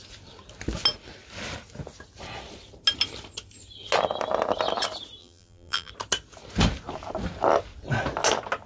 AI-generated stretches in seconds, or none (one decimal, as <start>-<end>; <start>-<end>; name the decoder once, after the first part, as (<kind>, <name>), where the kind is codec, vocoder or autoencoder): 5.2-5.9 (vocoder, BigVGAN v2)